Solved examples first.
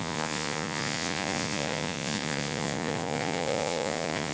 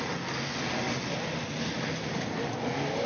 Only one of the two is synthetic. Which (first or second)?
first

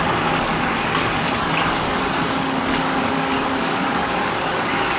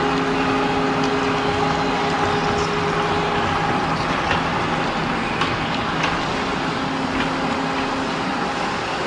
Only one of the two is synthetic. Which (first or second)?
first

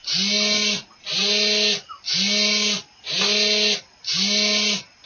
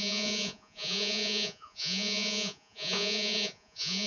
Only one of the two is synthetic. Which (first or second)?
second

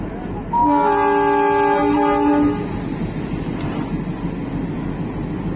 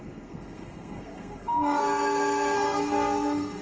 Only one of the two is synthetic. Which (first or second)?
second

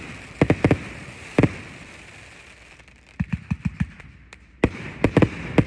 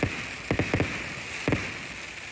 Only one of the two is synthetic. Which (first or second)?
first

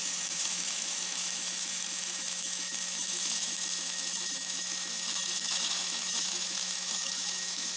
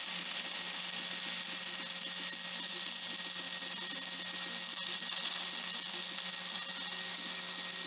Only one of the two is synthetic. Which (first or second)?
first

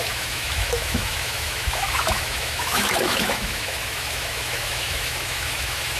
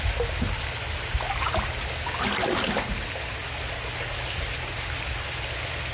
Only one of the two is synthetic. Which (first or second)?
first